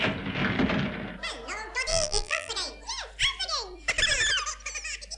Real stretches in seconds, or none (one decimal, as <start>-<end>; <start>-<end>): 0.0-1.9; 2.5-5.2